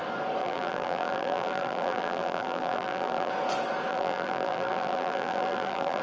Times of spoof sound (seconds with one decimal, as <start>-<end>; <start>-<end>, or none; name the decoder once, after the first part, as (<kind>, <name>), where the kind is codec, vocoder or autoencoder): 0.4-3.3 (vocoder, BigVGAN v2); 3.9-6.0